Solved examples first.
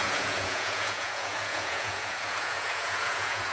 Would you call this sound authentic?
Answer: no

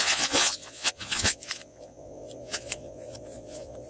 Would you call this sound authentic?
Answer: no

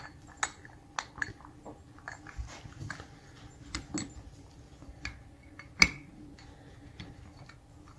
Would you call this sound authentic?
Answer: yes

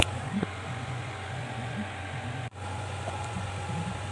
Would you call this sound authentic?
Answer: no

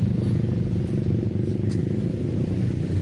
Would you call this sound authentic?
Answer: yes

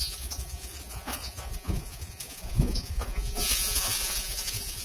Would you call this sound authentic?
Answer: no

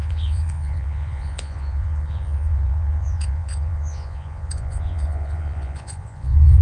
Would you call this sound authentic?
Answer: no